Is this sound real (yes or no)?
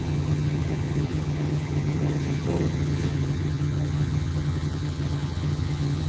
no